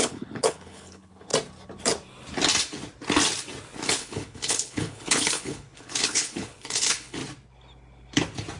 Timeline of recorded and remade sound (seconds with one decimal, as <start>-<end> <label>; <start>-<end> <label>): 0.0-1.3 remade; 1.3-3.9 recorded; 3.9-7.2 remade; 7.2-8.6 recorded